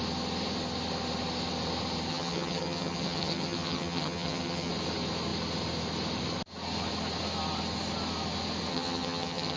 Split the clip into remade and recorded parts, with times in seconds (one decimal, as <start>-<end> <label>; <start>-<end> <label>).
0.0-2.1 recorded; 2.1-4.7 remade; 4.7-8.7 recorded; 8.7-9.6 remade